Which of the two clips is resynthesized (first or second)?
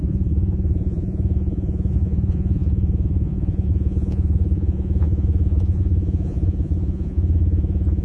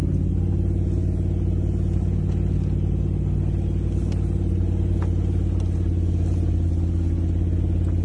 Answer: first